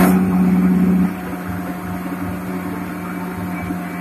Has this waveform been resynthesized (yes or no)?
no